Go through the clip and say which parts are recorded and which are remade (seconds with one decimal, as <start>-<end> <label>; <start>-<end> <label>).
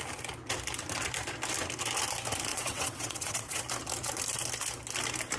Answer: 0.0-2.5 recorded; 2.5-3.6 remade; 3.6-5.4 recorded